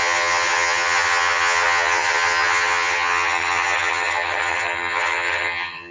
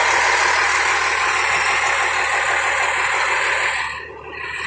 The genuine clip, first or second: second